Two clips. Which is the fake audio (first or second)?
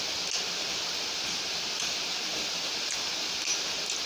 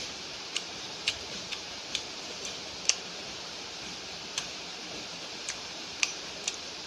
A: second